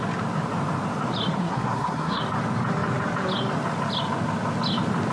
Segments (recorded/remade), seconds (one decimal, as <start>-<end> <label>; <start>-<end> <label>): 0.0-1.4 recorded; 1.4-2.2 remade; 2.2-5.1 recorded